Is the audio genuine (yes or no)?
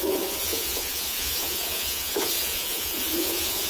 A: no